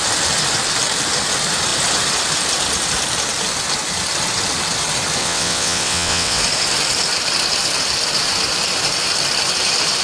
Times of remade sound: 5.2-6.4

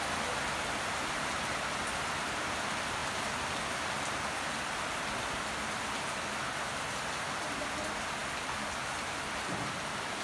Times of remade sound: none

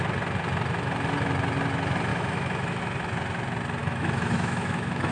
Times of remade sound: 2.1-2.8; 3.8-5.1

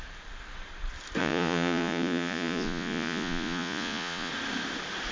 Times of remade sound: 1.2-4.3

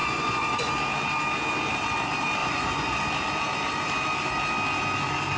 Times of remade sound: 0.0-0.7; 2.4-3.0